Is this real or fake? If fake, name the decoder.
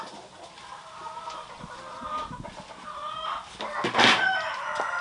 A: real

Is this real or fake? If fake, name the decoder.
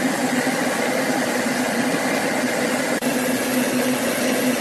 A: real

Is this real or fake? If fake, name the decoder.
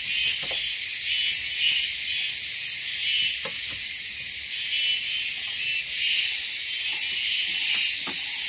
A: real